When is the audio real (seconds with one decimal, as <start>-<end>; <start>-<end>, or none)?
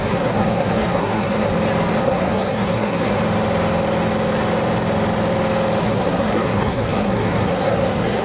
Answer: 1.5-2.0; 3.2-5.8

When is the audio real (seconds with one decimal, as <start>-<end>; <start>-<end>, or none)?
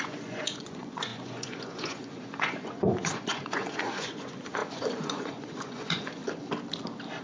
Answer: 6.2-7.2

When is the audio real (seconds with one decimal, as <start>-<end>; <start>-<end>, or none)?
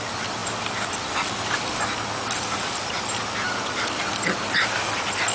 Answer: 0.0-5.3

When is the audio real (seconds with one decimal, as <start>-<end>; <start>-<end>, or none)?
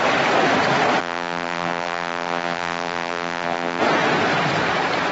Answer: 0.0-1.0; 3.8-5.1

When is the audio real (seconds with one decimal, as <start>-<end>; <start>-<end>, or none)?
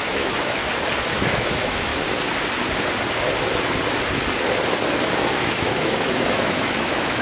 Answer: 0.6-1.1; 1.9-5.3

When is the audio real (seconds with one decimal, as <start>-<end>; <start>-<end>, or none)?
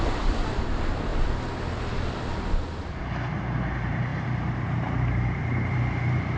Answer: 1.1-3.3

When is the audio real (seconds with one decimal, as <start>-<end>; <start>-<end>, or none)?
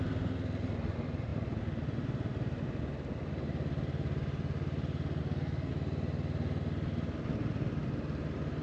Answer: 0.0-5.2; 5.7-8.6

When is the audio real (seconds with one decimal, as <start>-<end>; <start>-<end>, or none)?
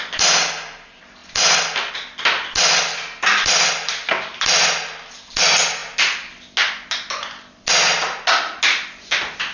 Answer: 0.0-9.5